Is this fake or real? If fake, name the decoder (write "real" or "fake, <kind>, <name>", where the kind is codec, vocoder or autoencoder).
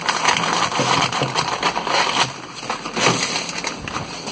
real